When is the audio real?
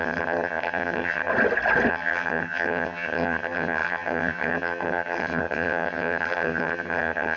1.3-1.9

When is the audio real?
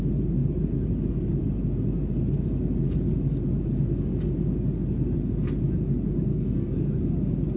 0.0-6.3; 6.9-7.6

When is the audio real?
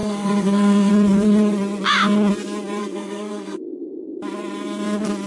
0.9-2.8; 3.6-5.3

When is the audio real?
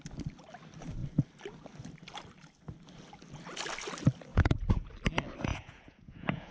0.0-4.3; 4.9-5.5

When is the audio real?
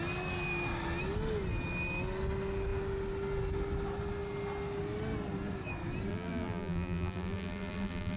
0.0-6.1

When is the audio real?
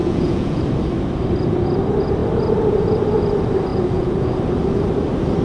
0.6-3.7; 4.4-5.4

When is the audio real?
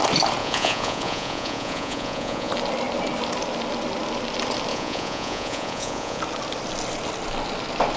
0.0-0.4; 2.5-4.7; 6.2-8.0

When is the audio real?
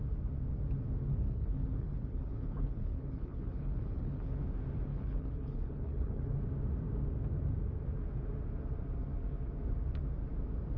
0.0-1.0; 4.4-4.9; 6.3-10.8